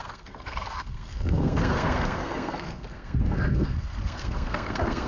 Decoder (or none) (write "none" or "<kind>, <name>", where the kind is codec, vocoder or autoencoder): codec, SNAC